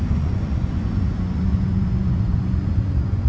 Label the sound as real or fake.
fake